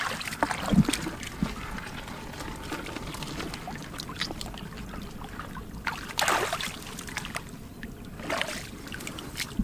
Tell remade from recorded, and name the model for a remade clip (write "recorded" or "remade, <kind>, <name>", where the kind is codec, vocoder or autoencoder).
recorded